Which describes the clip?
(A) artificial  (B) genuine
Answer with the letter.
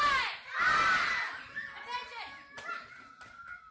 B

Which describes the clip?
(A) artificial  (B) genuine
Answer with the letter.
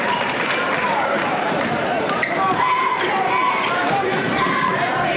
A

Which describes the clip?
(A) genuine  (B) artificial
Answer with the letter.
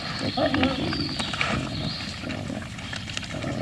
A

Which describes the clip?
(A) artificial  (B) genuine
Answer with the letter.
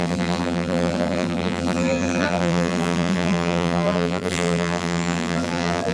A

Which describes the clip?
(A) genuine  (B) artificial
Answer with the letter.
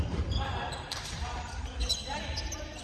B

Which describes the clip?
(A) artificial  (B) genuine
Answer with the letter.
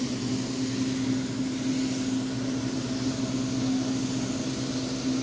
B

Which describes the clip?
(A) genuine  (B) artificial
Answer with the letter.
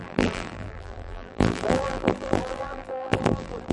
B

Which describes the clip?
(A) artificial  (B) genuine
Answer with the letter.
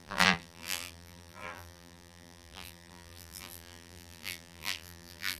A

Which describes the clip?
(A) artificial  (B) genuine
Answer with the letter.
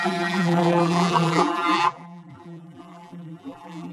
A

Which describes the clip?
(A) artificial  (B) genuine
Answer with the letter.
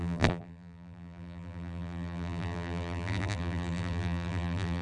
A